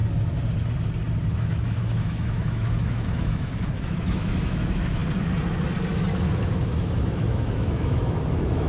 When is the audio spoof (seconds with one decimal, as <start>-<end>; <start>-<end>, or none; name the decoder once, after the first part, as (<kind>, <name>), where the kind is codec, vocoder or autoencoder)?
1.4-5.0 (autoencoder, DAC-VAE); 6.4-8.7